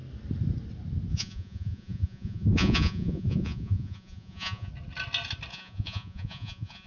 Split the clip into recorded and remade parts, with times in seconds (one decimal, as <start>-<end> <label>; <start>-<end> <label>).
0.0-1.1 recorded; 1.1-4.7 remade; 4.7-5.5 recorded; 5.5-6.9 remade